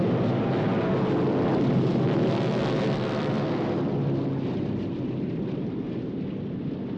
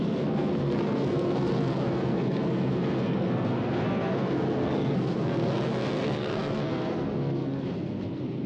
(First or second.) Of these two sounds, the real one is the first